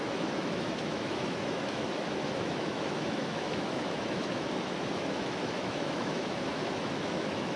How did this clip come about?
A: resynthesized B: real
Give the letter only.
A